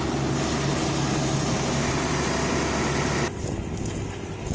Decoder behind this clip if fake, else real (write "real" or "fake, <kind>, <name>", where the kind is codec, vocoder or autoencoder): real